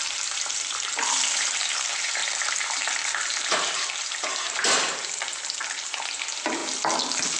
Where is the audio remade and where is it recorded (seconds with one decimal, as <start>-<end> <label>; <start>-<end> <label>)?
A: 0.0-6.6 remade; 6.6-7.4 recorded